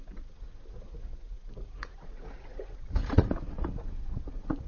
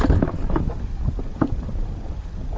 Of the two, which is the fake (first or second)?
first